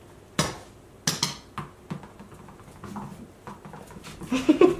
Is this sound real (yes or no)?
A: yes